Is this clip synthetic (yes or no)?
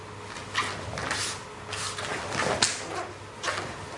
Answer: no